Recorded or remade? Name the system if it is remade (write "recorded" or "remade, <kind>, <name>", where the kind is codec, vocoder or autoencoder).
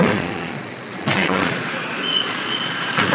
remade, vocoder, Vocos